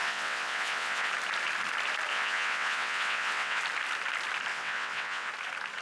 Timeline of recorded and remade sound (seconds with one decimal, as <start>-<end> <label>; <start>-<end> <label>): 0.0-1.1 remade; 1.1-2.1 recorded; 2.1-3.6 remade; 3.6-4.5 recorded; 4.5-5.3 remade; 5.3-5.8 recorded